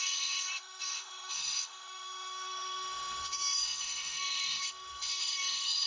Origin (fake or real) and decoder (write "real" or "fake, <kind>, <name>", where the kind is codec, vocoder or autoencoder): fake, autoencoder, DAC-VAE